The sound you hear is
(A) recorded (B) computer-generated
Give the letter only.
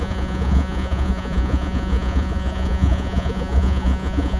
B